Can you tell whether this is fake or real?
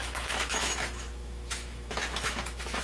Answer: fake